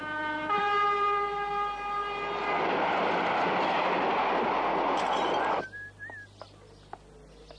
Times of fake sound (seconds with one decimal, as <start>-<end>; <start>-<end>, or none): none